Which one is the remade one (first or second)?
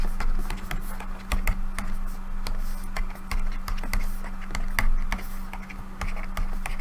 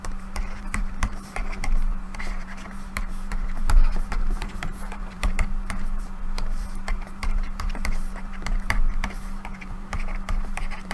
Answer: second